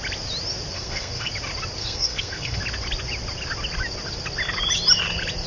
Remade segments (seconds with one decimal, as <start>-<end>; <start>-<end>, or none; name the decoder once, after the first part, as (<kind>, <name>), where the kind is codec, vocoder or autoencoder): 0.7-1.3 (codec, SNAC); 1.8-2.6